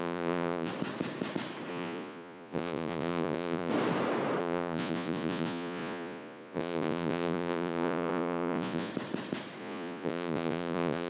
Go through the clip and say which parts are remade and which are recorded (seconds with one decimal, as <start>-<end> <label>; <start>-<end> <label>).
0.0-0.7 remade; 0.7-1.7 recorded; 1.7-3.7 remade; 3.7-4.4 recorded; 4.4-8.9 remade; 8.9-9.6 recorded; 9.6-11.1 remade